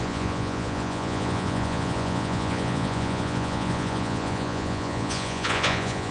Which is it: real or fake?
fake